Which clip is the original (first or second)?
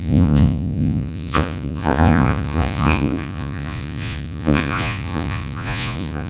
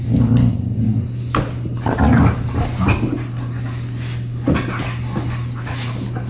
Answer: second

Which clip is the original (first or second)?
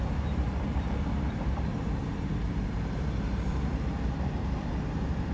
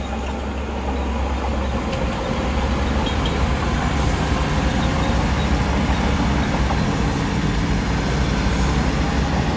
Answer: second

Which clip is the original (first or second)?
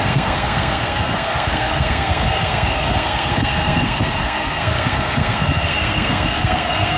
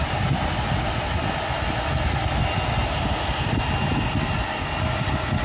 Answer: second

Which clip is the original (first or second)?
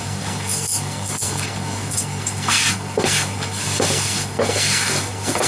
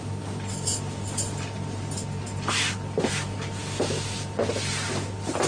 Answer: second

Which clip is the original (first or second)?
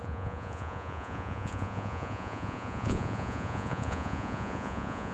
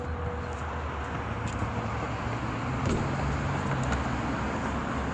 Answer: second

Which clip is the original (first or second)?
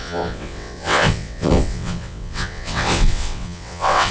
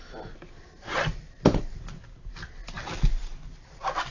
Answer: second